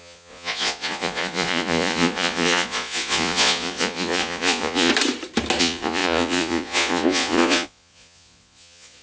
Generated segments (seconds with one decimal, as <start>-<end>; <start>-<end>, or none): 0.0-4.9; 5.6-9.0